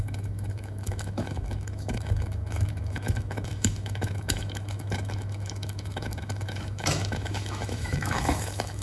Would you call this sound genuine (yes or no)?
no